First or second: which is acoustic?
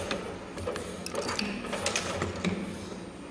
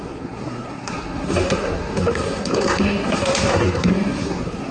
first